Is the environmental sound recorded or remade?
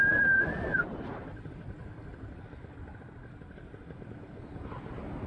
recorded